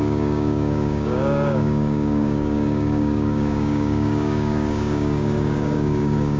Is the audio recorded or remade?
remade